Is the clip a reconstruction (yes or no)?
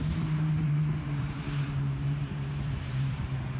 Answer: yes